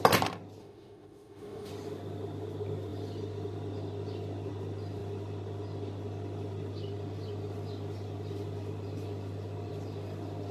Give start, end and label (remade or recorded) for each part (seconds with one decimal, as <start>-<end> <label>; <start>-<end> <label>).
0.0-0.6 recorded; 0.6-1.7 remade; 1.7-10.5 recorded